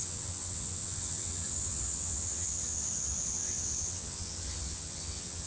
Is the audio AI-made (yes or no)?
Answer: yes